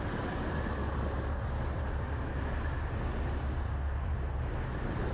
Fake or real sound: real